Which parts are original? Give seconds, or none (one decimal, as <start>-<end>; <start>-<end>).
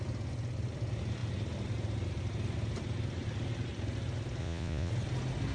0.0-4.4; 4.9-5.5